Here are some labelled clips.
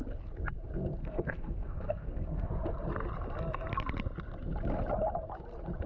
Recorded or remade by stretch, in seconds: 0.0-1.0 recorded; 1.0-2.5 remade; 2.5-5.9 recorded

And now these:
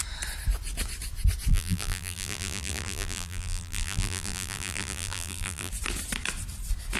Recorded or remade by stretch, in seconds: 0.0-1.5 recorded; 1.5-5.7 remade; 5.7-7.0 recorded

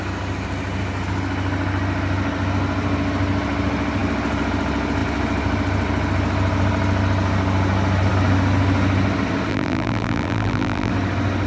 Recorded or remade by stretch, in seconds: 0.0-9.5 recorded; 9.5-10.9 remade; 10.9-11.5 recorded

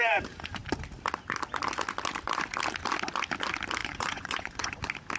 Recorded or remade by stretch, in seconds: 0.0-3.8 recorded; 3.8-4.8 remade; 4.8-5.2 recorded

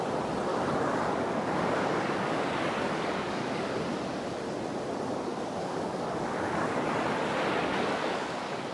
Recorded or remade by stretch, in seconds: 0.0-0.5 recorded; 0.5-3.7 remade; 3.7-5.3 recorded; 5.3-6.7 remade; 6.7-7.6 recorded; 7.6-8.7 remade

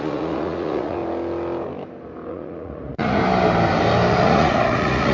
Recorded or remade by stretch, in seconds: 0.0-1.0 remade; 1.0-2.3 recorded; 2.3-3.2 remade; 3.2-4.1 recorded; 4.1-5.1 remade